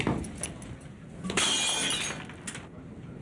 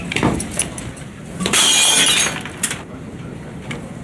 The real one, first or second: first